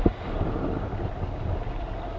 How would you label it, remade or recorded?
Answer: recorded